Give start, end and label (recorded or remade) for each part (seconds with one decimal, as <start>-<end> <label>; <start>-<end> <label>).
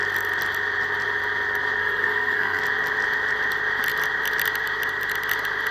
0.0-1.8 recorded; 1.8-2.6 remade; 2.6-5.7 recorded